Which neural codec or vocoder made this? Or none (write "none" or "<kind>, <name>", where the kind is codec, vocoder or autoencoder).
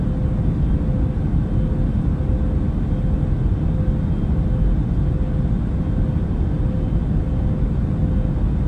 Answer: none